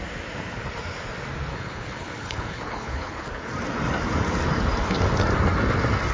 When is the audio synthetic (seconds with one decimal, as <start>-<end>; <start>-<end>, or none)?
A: 1.5-3.5